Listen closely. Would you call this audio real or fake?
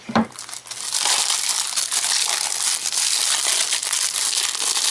real